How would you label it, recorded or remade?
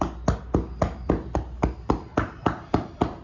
recorded